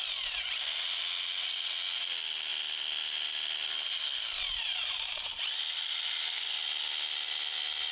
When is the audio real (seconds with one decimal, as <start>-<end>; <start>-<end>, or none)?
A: 0.0-7.9